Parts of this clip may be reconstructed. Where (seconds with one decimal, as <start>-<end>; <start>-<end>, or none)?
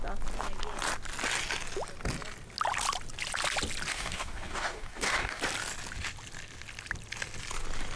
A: 3.9-5.4